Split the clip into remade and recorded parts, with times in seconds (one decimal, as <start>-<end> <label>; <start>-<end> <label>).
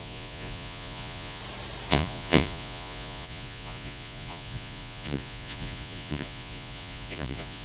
0.0-1.4 remade; 1.4-1.9 recorded; 1.9-7.6 remade